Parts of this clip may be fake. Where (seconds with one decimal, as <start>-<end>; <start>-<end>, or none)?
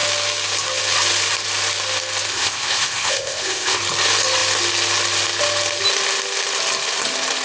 2.3-3.8